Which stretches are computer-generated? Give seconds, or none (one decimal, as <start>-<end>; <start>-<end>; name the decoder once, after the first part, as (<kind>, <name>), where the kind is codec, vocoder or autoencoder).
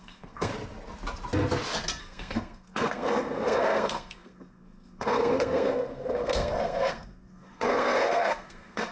0.0-0.5 (codec, SNAC); 2.0-8.9